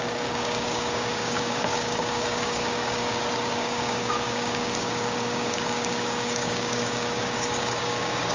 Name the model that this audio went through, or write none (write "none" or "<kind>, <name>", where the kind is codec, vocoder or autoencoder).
codec, DAC